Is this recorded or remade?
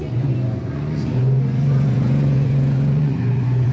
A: remade